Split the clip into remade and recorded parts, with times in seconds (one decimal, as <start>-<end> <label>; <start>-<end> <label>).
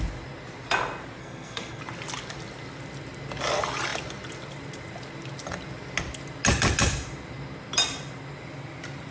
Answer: 0.0-1.2 recorded; 1.2-1.8 remade; 1.8-9.1 recorded